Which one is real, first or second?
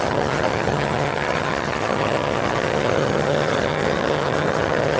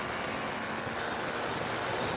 second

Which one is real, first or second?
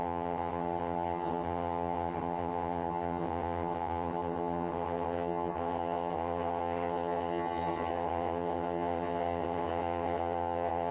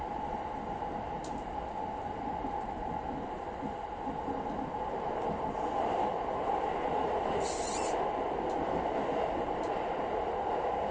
second